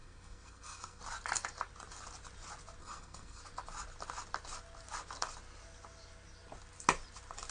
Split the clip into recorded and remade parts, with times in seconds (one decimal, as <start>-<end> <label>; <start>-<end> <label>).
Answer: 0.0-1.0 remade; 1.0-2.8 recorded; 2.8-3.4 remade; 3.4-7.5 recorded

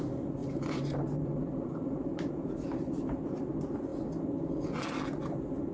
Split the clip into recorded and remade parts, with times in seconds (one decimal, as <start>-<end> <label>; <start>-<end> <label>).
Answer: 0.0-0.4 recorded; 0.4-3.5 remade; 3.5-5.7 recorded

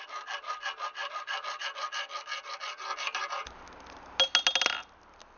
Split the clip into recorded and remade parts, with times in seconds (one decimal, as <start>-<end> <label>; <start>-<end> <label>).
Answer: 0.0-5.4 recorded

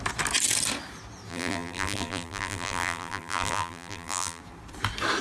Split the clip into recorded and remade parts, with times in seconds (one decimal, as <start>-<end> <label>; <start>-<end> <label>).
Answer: 0.0-1.3 recorded; 1.3-4.4 remade; 4.4-5.2 recorded

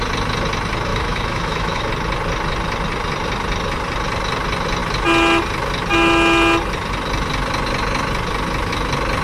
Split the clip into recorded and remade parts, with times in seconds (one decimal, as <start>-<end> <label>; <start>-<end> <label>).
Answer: 0.0-0.9 recorded; 0.9-1.9 remade; 1.9-9.2 recorded

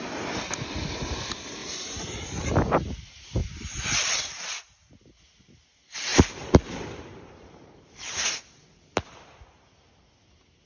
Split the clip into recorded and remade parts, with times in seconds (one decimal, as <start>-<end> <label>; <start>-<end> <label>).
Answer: 0.0-1.6 recorded; 1.6-2.5 remade; 2.5-6.1 recorded; 6.1-7.8 remade; 7.8-10.7 recorded

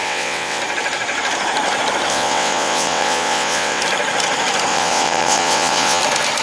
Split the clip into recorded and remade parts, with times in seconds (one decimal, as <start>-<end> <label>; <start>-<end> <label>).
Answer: 0.0-0.6 remade; 0.6-2.1 recorded; 2.1-3.8 remade; 3.8-4.7 recorded; 4.7-6.0 remade; 6.0-6.4 recorded